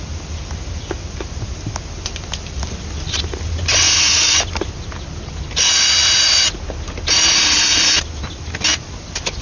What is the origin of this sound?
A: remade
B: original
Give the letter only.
B